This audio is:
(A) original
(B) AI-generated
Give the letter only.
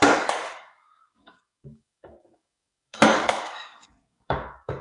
B